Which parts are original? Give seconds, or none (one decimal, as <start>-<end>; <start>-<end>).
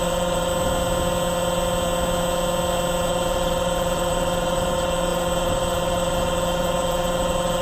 0.5-3.1